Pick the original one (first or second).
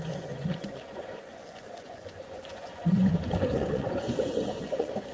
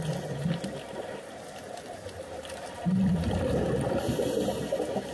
second